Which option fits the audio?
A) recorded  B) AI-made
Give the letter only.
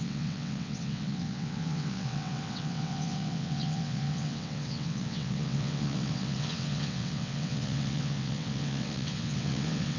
B